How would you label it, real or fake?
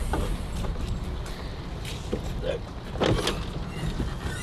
real